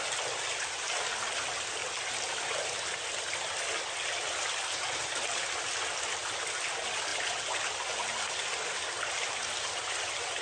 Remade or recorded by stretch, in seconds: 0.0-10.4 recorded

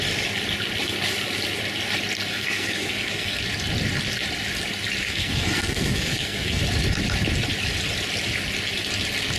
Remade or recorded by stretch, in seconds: 0.0-2.3 recorded; 2.3-3.4 remade; 3.4-5.0 recorded; 5.0-6.6 remade; 6.6-9.4 recorded

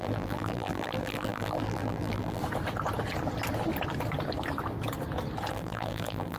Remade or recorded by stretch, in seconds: 0.0-2.4 remade; 2.4-5.5 recorded; 5.5-6.4 remade

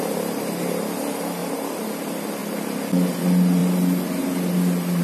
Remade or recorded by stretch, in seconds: 0.0-1.4 recorded; 1.4-1.9 remade; 1.9-5.0 recorded

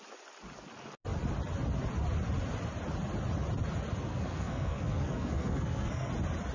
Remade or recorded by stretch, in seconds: 0.0-4.1 recorded; 4.1-6.1 remade; 6.1-6.5 recorded

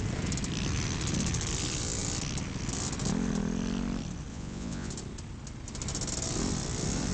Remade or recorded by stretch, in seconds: 0.0-4.3 recorded; 4.3-4.9 remade; 4.9-7.1 recorded